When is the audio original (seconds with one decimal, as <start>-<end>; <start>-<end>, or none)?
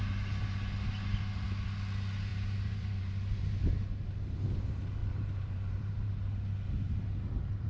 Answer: 0.0-2.3; 3.6-5.0; 6.1-7.7